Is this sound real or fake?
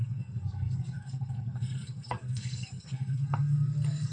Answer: fake